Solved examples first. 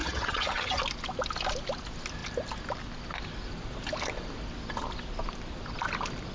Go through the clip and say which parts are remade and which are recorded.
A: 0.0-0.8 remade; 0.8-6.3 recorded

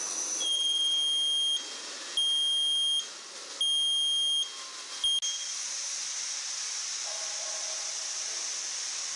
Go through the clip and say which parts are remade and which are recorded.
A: 0.0-1.0 remade; 1.0-5.5 recorded; 5.5-6.0 remade; 6.0-9.2 recorded

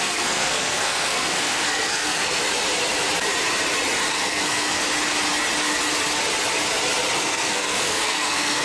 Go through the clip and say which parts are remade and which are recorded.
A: 0.0-2.4 remade; 2.4-4.1 recorded; 4.1-4.8 remade; 4.8-7.2 recorded; 7.2-8.6 remade

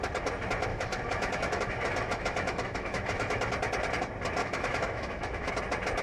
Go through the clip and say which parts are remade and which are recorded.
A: 0.0-0.7 recorded; 0.7-3.5 remade; 3.5-4.4 recorded; 4.4-5.5 remade; 5.5-6.0 recorded

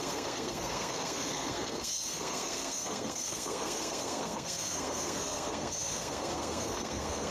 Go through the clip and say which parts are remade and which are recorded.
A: 0.0-7.3 remade

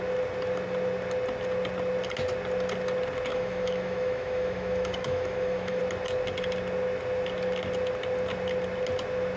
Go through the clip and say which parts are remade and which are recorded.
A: 0.0-3.3 recorded; 3.3-5.8 remade; 5.8-9.4 recorded

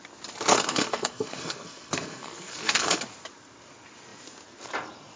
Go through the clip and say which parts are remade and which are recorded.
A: 0.0-0.5 recorded; 0.5-3.0 remade; 3.0-5.2 recorded

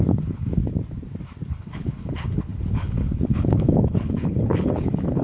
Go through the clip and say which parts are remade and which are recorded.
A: 0.0-0.6 remade; 0.6-1.5 recorded; 1.5-5.2 remade